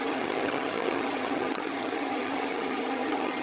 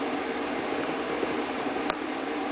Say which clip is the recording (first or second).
second